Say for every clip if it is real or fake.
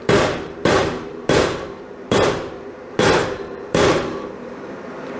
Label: fake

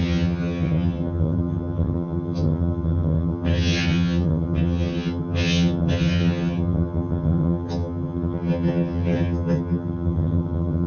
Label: fake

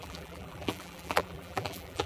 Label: fake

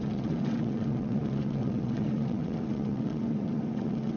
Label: fake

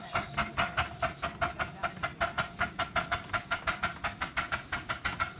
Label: real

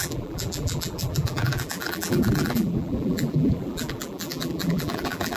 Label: fake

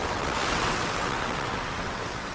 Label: fake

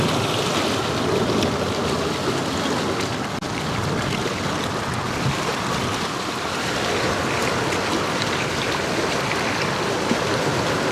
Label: real